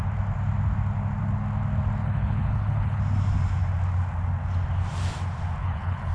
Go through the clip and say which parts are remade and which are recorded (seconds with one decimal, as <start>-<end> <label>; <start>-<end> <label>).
0.0-2.0 recorded; 2.0-3.0 remade; 3.0-5.6 recorded; 5.6-6.1 remade